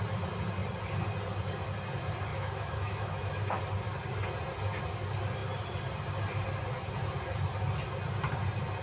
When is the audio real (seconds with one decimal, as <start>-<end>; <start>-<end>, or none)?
0.0-2.3; 3.6-8.8